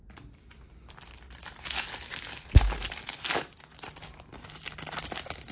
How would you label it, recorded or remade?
recorded